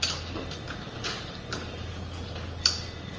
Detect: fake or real real